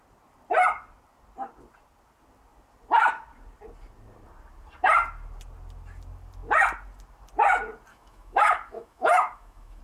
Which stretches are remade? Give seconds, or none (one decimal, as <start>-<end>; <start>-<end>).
7.9-9.8